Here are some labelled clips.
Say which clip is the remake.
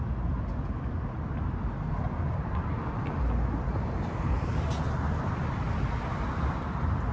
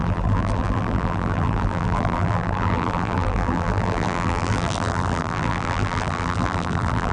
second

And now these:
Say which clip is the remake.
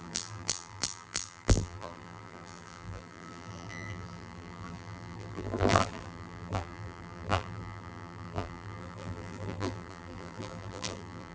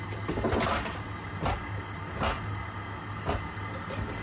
first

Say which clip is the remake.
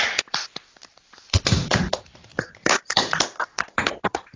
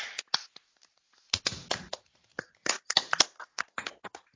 first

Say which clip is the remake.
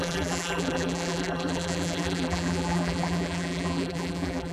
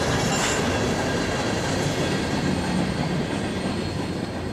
first